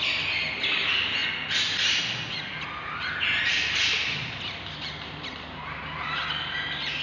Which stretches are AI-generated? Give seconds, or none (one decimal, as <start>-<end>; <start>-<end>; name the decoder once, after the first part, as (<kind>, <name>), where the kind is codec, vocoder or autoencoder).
none